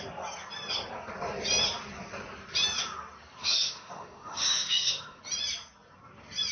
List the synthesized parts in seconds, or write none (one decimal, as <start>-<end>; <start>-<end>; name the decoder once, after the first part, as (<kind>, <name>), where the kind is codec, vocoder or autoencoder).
3.4-5.2 (autoencoder, DAC-VAE)